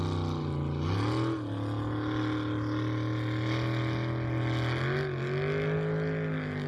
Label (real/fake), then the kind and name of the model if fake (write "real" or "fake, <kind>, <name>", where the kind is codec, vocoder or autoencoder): real